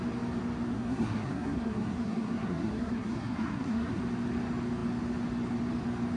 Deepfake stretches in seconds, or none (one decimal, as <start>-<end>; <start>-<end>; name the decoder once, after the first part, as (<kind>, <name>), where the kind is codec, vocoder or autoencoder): 0.7-4.0 (codec, SNAC)